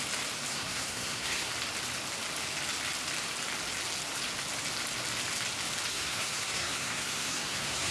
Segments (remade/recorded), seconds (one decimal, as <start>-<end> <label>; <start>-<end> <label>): 0.0-0.5 recorded; 0.5-1.5 remade; 1.5-5.9 recorded; 5.9-7.9 remade